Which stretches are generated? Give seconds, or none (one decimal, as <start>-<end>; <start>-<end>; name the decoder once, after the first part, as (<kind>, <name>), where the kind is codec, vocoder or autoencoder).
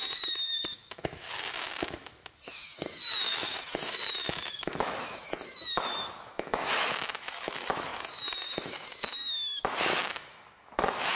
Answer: 0.0-11.2 (autoencoder, DAC-VAE)